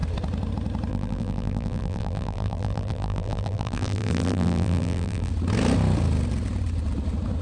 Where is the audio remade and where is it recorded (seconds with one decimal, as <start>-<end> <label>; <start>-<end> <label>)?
0.0-0.9 recorded; 0.9-5.3 remade; 5.3-7.4 recorded